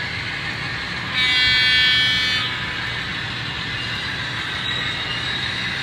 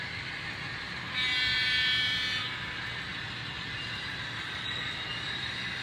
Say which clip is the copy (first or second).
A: second